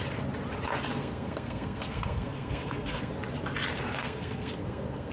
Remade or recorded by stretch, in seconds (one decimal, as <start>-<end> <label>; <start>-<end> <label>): 0.0-0.9 recorded; 0.9-3.1 remade; 3.1-4.0 recorded; 4.0-5.1 remade